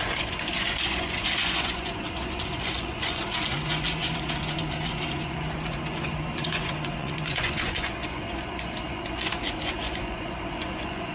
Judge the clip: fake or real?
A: fake